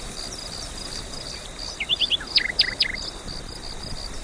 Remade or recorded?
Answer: recorded